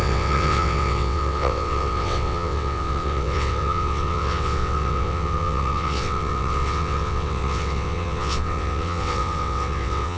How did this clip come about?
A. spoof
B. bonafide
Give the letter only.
A